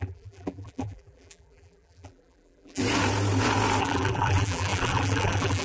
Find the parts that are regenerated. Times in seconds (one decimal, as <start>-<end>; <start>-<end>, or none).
0.0-2.8; 3.8-5.6